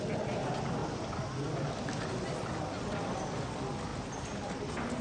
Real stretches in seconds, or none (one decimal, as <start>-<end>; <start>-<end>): 0.0-5.0